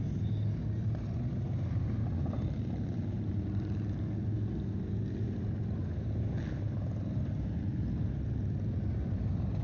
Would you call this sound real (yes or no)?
yes